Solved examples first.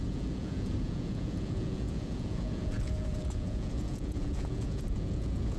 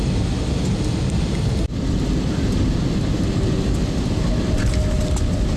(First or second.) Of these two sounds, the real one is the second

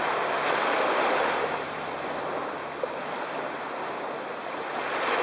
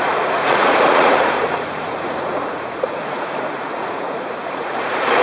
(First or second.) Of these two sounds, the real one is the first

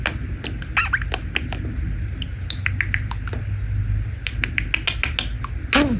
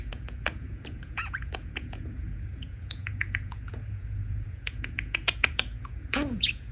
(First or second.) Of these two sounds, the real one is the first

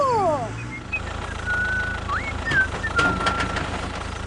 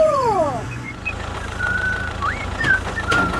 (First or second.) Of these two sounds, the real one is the first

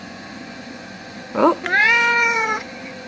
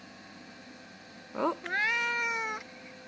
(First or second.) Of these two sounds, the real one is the second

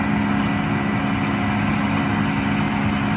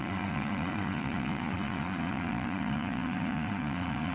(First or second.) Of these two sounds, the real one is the first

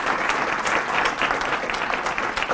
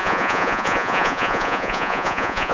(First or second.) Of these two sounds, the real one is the first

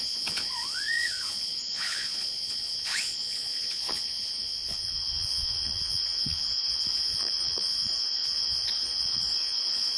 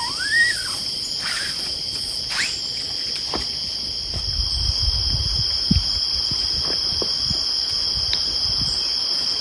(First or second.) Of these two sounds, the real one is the second